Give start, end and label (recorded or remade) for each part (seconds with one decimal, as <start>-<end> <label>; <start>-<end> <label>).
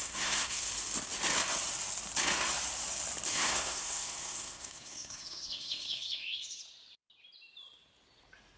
0.0-0.7 remade; 0.7-3.3 recorded; 3.3-6.6 remade; 6.6-8.6 recorded